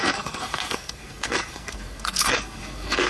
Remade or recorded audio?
remade